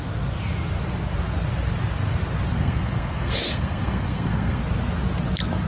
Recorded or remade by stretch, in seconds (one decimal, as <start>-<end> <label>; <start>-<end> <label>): 0.0-2.5 recorded; 2.5-4.6 remade; 4.6-5.7 recorded

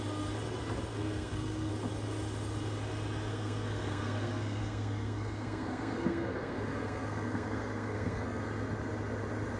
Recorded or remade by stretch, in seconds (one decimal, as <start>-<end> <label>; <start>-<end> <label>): 0.0-0.9 recorded; 0.9-1.7 remade; 1.7-3.3 recorded; 3.3-8.4 remade; 8.4-9.6 recorded

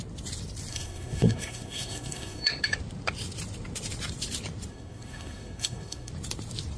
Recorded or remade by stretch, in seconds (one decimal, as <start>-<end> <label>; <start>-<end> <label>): 0.0-0.7 recorded; 0.7-2.6 remade; 2.6-4.7 recorded; 4.7-6.1 remade; 6.1-6.8 recorded

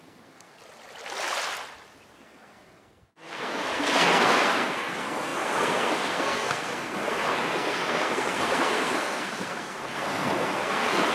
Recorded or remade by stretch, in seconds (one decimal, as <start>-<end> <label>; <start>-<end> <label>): 0.0-0.6 remade; 0.6-2.1 recorded; 2.1-11.1 remade

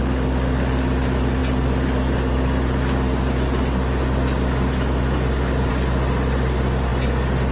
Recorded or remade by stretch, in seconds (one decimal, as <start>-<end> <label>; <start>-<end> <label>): 0.0-7.5 recorded

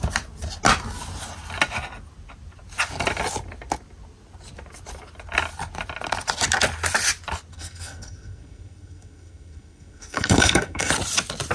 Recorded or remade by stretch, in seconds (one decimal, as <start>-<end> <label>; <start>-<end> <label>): 0.0-7.5 recorded; 7.5-10.9 remade; 10.9-11.5 recorded